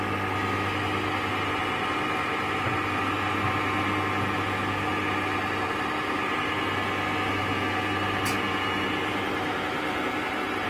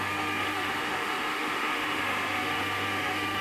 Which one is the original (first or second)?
first